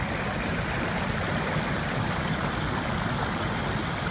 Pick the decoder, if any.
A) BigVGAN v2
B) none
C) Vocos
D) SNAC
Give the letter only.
B